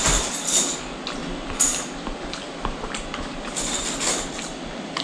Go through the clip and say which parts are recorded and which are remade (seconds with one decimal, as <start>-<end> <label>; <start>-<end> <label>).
0.0-5.0 recorded